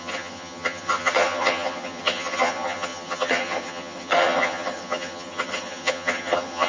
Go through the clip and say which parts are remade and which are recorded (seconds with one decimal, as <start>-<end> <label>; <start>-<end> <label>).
0.0-6.7 remade